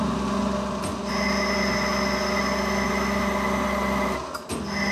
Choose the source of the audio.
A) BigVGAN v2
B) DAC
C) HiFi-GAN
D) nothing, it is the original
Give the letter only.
D